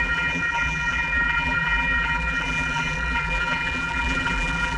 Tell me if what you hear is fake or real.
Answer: fake